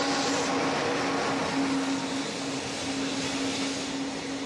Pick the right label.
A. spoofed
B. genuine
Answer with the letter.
B